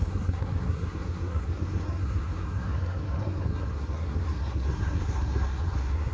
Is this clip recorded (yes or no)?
no